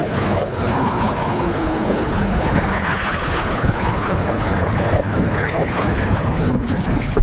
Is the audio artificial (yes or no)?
yes